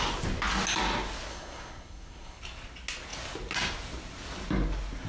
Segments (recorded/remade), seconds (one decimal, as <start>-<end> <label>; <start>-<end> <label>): 0.0-1.3 recorded; 1.3-2.4 remade; 2.4-5.1 recorded